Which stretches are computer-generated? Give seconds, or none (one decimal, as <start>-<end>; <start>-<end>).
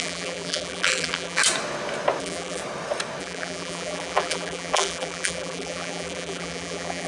0.0-1.4; 2.2-2.6; 3.2-7.1